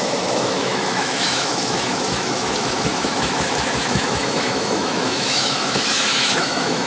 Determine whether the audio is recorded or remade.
remade